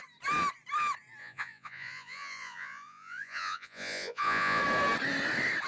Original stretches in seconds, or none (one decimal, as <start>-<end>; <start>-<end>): 0.0-1.2; 4.6-5.7